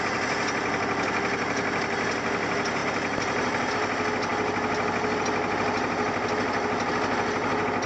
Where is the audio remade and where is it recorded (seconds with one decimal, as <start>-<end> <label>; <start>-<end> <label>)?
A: 0.0-7.9 recorded